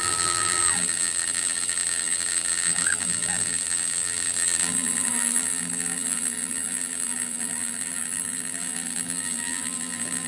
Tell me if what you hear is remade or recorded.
remade